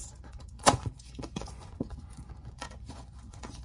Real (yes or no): no